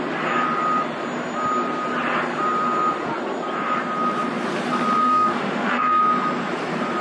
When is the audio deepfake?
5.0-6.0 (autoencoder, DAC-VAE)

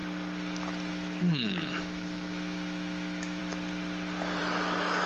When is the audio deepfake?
0.9-3.4 (autoencoder, DAC-VAE); 4.4-5.1

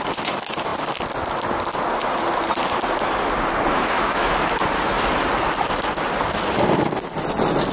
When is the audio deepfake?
3.7-4.3 (autoencoder, DAC-VAE)

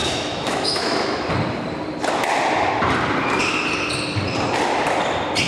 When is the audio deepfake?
0.0-1.3 (autoencoder, DAC-VAE)